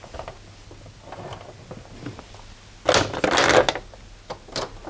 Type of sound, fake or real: real